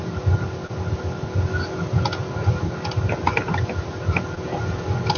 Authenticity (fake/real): real